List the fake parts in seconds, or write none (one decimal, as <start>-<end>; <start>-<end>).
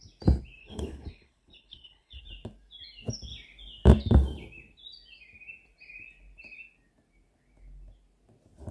0.6-2.2